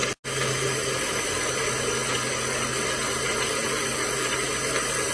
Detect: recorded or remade recorded